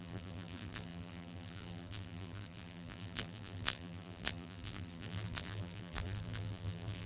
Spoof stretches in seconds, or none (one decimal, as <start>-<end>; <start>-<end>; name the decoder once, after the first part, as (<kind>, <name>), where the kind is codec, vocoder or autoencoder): 0.0-7.1 (vocoder, BigVGAN v2)